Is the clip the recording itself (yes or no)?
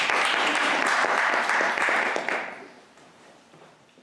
no